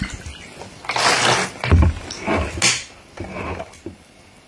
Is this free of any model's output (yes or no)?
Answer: yes